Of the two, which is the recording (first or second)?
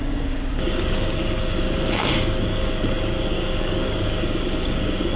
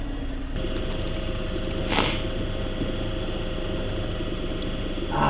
second